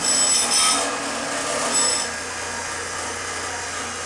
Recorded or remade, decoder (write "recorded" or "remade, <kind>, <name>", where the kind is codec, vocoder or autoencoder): recorded